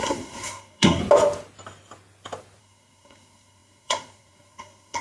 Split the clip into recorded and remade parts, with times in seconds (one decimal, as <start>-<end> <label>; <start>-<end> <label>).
0.0-1.0 remade; 1.0-2.6 recorded; 2.6-5.0 remade